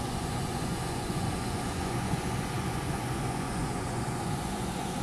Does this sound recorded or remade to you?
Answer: remade